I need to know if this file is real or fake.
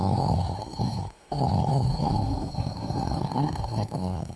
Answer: fake